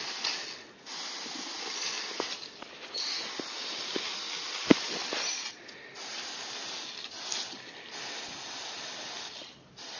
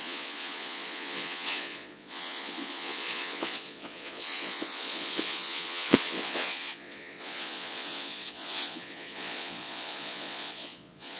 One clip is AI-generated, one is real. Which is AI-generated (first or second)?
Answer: second